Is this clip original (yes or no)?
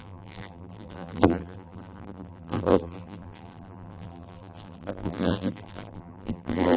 no